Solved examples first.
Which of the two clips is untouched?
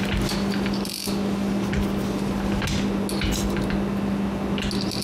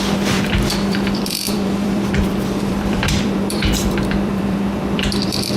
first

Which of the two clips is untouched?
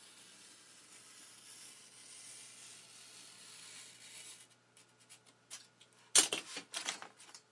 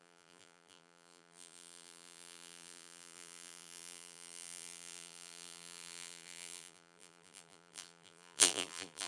first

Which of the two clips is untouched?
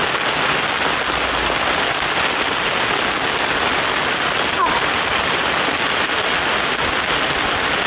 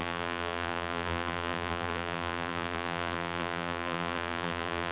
first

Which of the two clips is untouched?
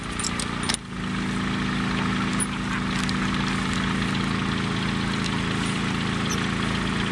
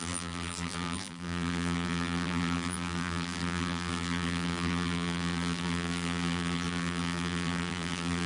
first